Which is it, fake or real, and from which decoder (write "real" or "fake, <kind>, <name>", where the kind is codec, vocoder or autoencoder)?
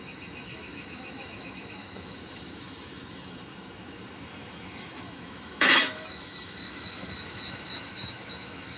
fake, autoencoder, DAC-VAE